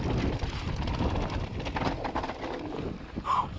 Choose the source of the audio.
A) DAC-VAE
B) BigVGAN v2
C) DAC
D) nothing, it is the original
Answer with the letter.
B